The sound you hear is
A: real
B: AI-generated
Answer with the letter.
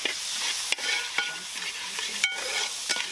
A